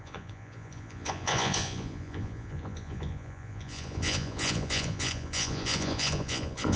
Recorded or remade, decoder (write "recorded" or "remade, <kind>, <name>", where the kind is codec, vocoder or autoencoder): remade, vocoder, Vocos